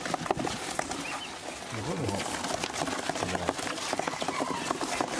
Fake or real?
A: real